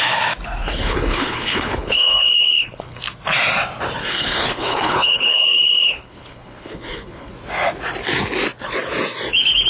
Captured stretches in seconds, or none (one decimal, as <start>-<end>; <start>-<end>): 0.0-0.6; 3.0-4.0; 7.3-9.7